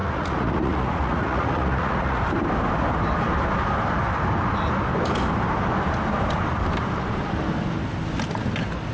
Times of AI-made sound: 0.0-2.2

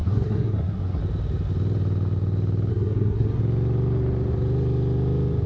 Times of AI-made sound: 0.0-1.0; 2.7-3.4

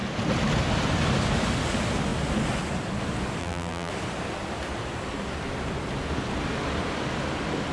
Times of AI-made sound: 3.4-3.9

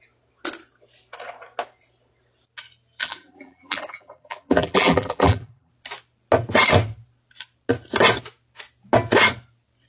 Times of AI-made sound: 3.0-5.7

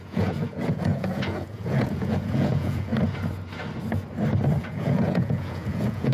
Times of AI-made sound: 0.0-2.9; 4.6-6.1